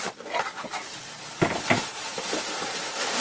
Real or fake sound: real